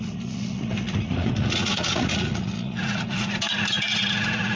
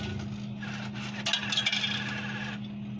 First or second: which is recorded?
second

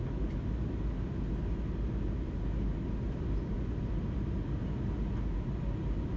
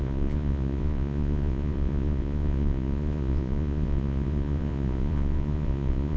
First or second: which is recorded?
first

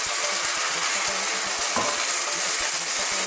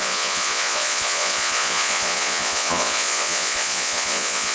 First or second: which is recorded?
first